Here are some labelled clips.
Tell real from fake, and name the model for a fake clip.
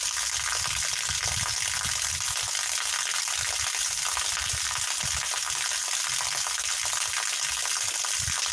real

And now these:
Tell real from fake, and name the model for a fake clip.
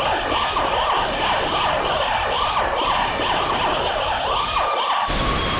real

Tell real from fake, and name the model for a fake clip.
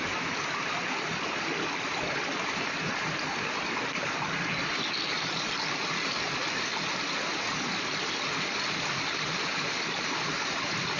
real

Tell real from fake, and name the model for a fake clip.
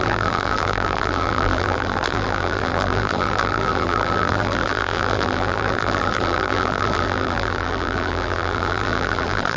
fake, vocoder, BigVGAN v2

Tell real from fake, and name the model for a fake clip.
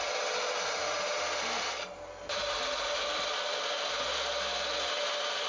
real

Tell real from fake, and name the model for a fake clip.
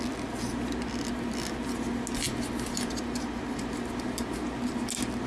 real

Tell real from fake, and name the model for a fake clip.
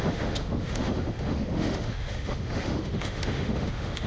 fake, autoencoder, DAC-VAE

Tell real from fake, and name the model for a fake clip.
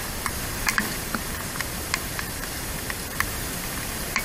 fake, vocoder, BigVGAN v2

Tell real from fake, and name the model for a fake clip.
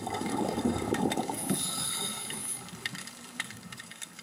fake, codec, DAC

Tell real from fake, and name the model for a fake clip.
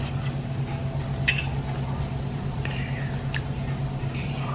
fake, vocoder, BigVGAN v2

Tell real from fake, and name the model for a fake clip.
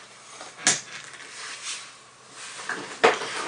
real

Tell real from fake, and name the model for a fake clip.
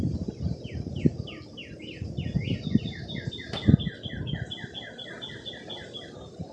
real